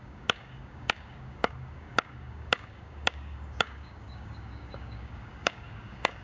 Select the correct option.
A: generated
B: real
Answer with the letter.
A